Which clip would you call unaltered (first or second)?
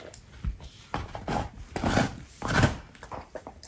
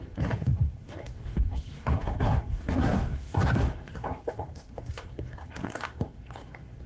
first